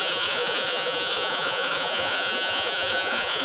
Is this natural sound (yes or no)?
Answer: no